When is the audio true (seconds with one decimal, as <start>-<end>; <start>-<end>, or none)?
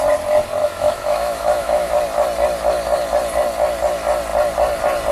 0.0-0.6; 1.9-5.1